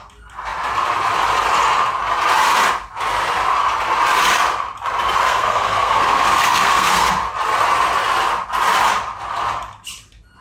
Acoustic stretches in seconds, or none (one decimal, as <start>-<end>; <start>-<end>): 0.0-5.2; 7.1-10.4